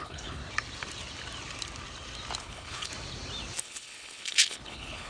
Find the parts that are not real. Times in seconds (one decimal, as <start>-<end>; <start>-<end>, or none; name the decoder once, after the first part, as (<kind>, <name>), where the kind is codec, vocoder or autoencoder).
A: 0.0-0.4 (codec, HILCodec); 2.4-2.9; 3.6-5.1

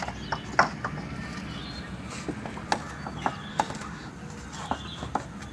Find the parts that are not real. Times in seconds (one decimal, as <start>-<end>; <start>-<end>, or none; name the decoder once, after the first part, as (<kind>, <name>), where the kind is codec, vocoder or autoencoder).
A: 3.5-4.1 (autoencoder, DAC-VAE)

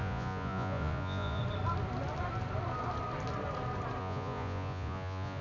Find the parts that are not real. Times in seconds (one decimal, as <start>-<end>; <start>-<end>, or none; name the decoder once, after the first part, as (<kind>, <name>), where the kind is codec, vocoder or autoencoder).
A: 0.0-1.4 (vocoder, Vocos); 4.0-5.4